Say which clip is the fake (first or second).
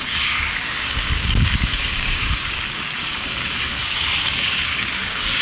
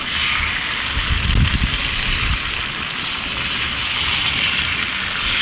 first